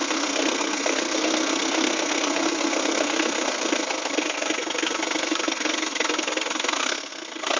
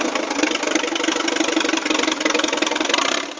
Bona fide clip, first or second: second